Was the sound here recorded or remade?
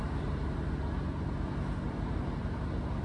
recorded